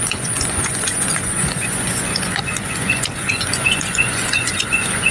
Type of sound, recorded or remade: remade